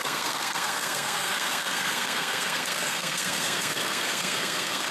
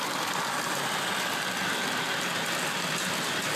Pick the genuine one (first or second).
second